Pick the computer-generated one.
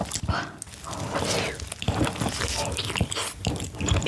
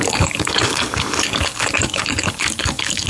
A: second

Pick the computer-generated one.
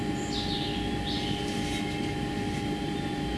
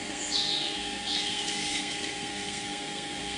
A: second